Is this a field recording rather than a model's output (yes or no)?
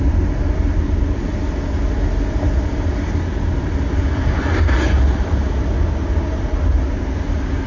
yes